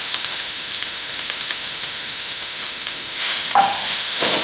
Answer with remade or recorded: remade